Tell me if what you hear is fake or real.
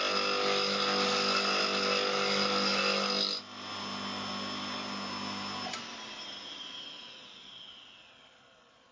real